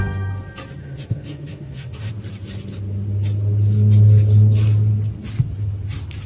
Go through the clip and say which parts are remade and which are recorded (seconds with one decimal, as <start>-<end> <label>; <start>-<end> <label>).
0.0-0.8 recorded; 0.8-2.1 remade; 2.1-6.3 recorded